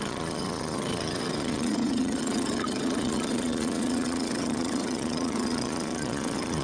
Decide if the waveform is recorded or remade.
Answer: remade